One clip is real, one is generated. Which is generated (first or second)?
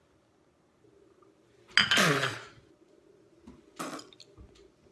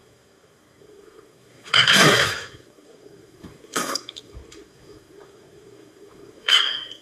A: second